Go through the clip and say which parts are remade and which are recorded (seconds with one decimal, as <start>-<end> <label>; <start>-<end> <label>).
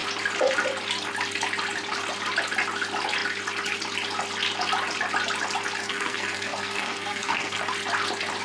0.0-5.8 recorded; 5.8-7.6 remade; 7.6-8.4 recorded